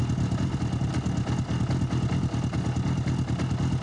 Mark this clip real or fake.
real